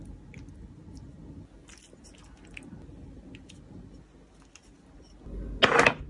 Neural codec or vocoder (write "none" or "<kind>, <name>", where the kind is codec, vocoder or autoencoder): none